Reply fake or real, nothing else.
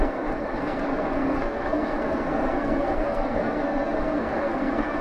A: fake